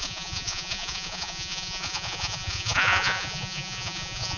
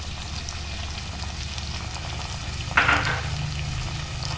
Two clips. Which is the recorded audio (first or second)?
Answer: second